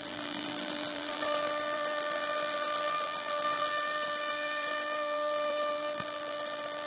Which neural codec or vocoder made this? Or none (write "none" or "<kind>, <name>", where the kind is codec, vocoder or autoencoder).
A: vocoder, BigVGAN v2